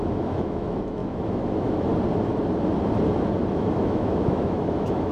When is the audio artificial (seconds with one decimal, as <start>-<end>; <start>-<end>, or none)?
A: 0.0-1.9; 3.5-5.1